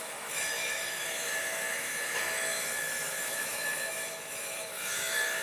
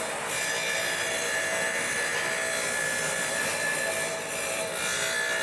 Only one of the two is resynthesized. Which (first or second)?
first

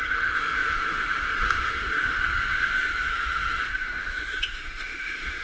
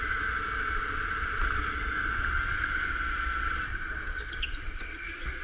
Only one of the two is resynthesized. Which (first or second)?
first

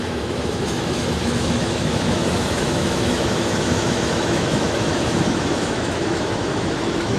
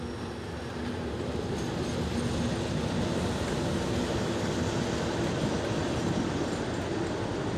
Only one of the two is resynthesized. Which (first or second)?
first